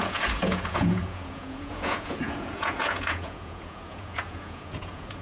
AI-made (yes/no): yes